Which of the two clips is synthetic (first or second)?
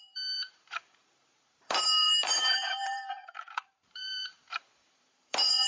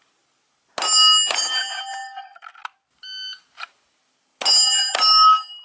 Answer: first